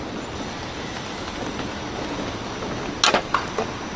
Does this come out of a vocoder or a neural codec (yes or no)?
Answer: no